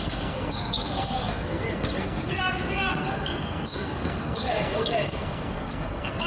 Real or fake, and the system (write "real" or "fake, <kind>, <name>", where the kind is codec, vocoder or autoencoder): fake, codec, SNAC